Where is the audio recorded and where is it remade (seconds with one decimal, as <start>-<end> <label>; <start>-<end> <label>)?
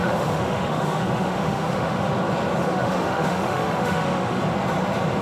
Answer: 0.0-2.1 remade; 2.1-2.6 recorded; 2.6-4.4 remade; 4.4-5.2 recorded